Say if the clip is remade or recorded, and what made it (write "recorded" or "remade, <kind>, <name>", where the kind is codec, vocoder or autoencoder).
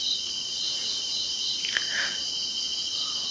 recorded